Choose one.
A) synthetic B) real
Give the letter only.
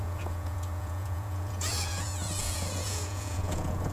A